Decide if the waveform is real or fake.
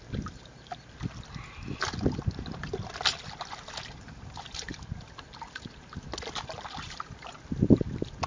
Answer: real